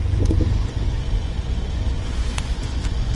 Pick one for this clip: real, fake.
fake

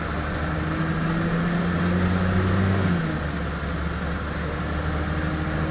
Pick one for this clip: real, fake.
real